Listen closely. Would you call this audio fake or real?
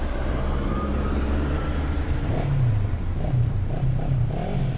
fake